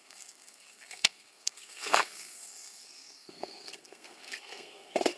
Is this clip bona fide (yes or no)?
no